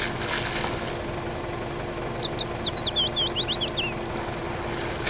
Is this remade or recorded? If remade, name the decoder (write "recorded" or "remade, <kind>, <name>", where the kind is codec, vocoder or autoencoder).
recorded